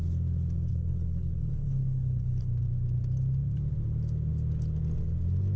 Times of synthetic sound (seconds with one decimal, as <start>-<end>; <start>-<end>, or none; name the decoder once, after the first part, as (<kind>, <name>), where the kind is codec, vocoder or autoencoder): 0.7-2.5 (codec, HILCodec)